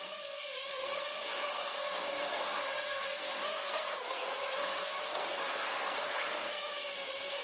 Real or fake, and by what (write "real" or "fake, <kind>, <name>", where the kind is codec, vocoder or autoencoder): fake, codec, SNAC